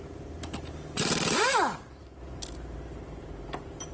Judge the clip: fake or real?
fake